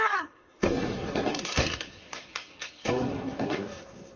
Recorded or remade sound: remade